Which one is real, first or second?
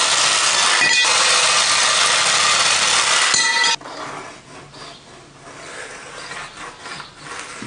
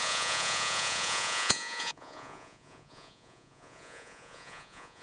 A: first